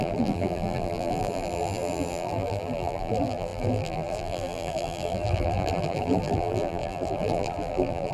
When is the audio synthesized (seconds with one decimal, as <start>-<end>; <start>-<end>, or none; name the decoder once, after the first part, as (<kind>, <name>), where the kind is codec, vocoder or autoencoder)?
0.0-8.1 (vocoder, BigVGAN v2)

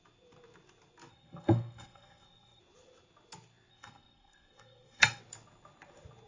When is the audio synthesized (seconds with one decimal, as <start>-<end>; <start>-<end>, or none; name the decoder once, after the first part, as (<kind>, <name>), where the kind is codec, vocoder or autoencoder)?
1.1-2.6 (codec, SNAC); 3.7-5.2

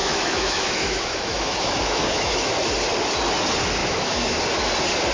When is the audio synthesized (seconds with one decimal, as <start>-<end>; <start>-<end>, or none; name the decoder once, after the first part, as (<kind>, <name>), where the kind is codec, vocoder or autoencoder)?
0.0-2.5 (autoencoder, DAC-VAE); 3.8-4.3

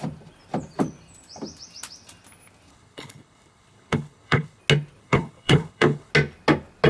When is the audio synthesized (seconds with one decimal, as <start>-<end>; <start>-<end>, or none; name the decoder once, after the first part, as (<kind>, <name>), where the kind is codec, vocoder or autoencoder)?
2.7-4.6 (codec, HILCodec); 5.0-6.1

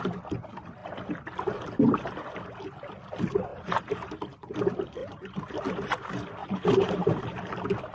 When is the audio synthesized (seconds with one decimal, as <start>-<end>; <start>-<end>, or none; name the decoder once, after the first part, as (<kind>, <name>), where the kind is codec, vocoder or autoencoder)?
3.5-4.2 (vocoder, BigVGAN v2); 5.0-5.6; 6.4-7.4

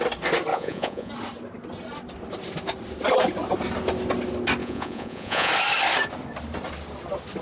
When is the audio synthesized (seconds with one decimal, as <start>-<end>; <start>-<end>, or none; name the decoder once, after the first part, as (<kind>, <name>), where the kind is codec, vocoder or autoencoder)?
0.5-1.1 (vocoder, Vocos); 4.6-5.5